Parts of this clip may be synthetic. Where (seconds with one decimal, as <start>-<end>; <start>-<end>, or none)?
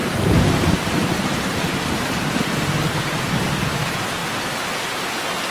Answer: 0.0-4.2